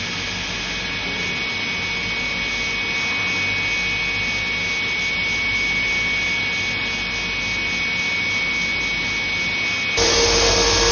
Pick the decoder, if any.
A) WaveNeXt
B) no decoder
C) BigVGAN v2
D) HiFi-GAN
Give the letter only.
B